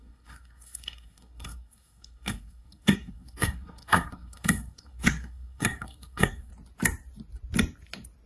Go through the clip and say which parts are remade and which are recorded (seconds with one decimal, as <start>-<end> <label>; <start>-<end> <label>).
0.0-6.5 remade; 6.5-8.3 recorded